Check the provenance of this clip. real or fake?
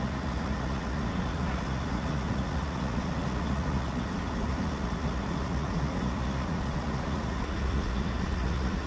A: fake